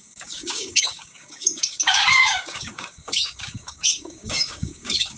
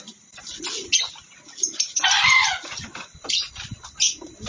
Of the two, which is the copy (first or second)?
first